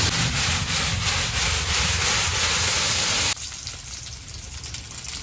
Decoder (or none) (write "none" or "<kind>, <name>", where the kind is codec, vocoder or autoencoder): none